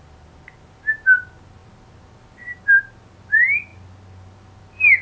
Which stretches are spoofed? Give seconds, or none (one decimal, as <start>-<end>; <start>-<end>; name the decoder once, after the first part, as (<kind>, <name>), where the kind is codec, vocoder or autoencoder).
none